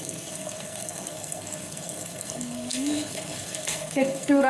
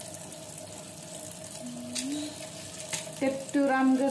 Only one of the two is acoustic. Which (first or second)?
second